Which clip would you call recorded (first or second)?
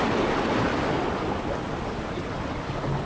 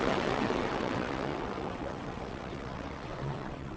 first